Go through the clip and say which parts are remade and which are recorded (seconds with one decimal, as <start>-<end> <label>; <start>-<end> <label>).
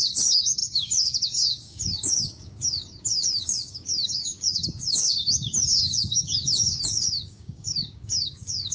0.0-8.7 remade